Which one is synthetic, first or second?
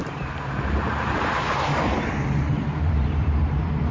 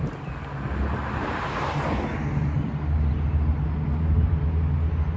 first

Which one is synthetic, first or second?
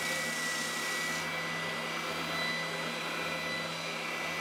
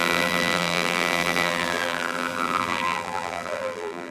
second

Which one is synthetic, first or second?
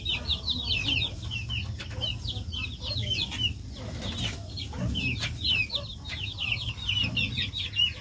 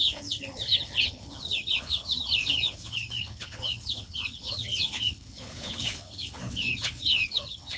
second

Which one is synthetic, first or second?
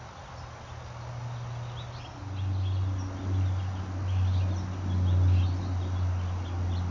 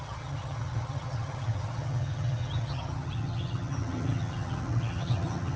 second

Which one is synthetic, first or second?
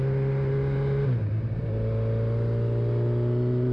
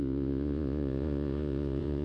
second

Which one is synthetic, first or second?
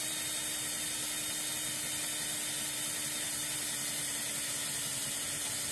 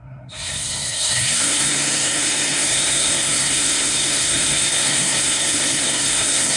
second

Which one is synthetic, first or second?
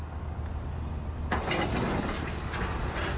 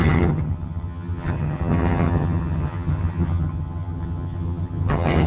second